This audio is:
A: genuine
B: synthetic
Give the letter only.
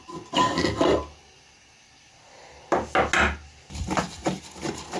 A